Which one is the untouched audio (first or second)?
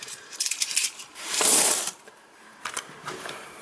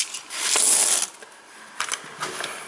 second